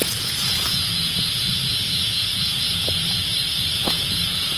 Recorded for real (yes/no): no